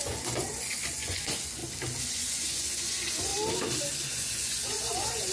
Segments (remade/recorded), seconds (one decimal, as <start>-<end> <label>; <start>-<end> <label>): 0.0-1.6 remade; 1.6-2.1 recorded; 2.1-3.3 remade; 3.3-4.1 recorded; 4.1-5.3 remade